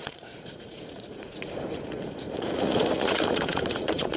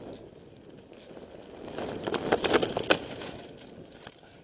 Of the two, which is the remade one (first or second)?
first